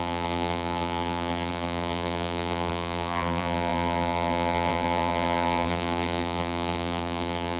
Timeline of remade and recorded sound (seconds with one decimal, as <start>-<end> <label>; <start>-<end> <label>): 0.0-7.6 remade